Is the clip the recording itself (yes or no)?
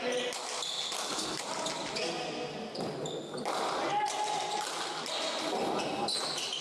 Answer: yes